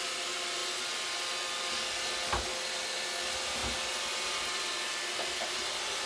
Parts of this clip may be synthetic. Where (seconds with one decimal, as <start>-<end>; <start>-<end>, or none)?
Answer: none